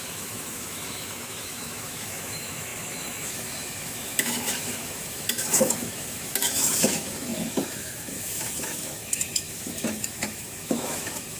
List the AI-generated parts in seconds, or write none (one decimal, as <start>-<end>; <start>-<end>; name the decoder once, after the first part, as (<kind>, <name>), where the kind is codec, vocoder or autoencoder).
0.0-11.4 (autoencoder, DAC-VAE)